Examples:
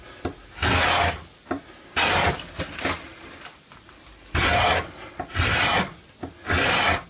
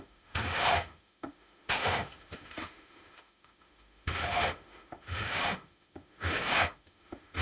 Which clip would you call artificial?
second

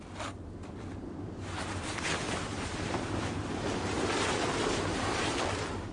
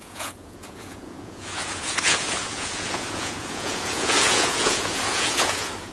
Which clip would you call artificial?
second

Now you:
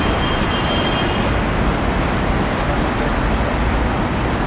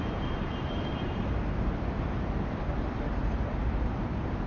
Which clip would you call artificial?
second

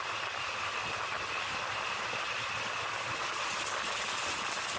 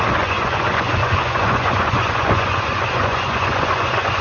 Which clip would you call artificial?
second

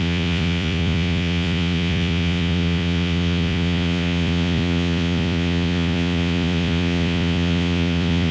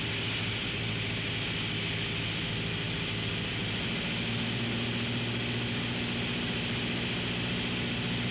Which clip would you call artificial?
first